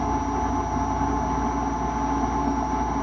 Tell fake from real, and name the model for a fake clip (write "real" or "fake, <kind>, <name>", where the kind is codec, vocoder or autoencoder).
real